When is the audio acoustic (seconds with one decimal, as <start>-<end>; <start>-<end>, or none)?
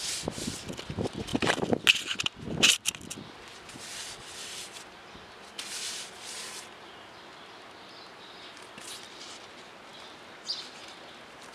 0.0-11.5